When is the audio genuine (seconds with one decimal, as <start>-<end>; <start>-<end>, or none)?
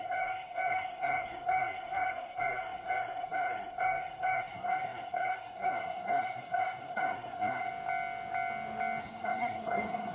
7.7-9.0